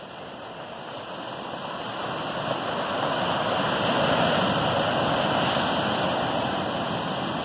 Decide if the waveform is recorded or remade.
recorded